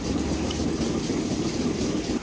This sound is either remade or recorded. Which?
recorded